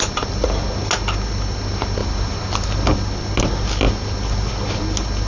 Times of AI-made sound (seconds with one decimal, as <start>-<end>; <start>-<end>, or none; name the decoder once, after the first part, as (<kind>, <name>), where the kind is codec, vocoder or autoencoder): none